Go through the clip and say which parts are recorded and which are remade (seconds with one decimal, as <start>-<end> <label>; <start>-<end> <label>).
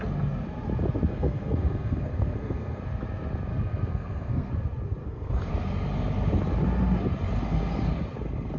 0.0-1.1 recorded; 1.1-2.8 remade; 2.8-3.5 recorded; 3.5-4.5 remade; 4.5-5.0 recorded; 5.0-5.5 remade; 5.5-8.6 recorded